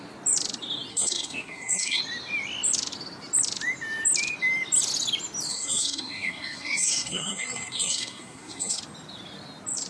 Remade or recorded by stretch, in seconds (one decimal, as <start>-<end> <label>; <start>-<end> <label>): 0.0-0.9 recorded; 0.9-2.0 remade; 2.0-5.5 recorded; 5.5-8.8 remade; 8.8-9.9 recorded